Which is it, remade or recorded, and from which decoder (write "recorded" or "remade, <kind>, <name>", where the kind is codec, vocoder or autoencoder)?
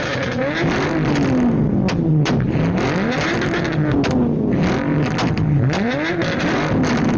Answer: recorded